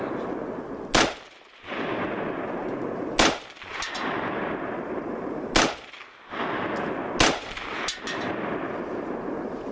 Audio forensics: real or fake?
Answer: real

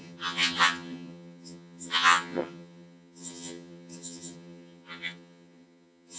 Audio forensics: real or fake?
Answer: fake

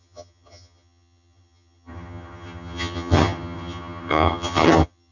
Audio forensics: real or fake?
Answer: fake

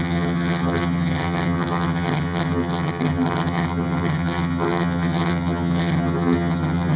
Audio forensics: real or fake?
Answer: fake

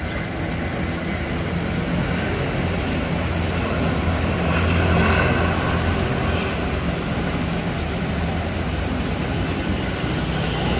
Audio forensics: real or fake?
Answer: real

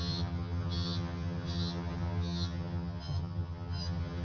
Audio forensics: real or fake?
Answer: fake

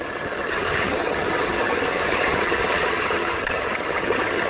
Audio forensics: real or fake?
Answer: fake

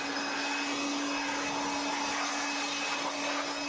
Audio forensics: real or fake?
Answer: real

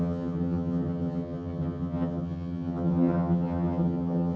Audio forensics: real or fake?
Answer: fake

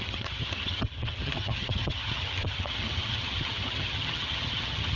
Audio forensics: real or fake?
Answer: fake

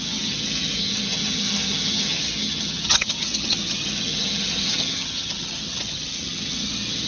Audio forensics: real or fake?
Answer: fake